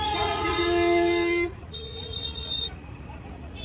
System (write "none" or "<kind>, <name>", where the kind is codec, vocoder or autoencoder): vocoder, Vocos